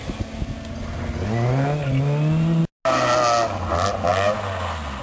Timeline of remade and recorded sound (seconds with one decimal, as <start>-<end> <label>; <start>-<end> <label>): 0.0-5.0 recorded